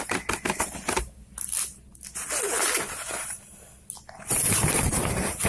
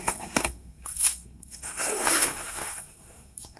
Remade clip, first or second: second